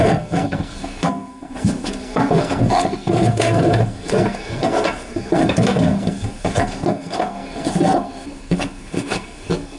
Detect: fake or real fake